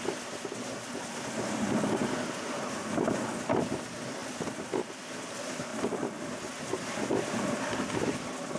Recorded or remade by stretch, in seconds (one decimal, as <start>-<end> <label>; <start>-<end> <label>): 0.0-8.6 recorded